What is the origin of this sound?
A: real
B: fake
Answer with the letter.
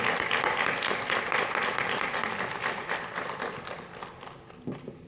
A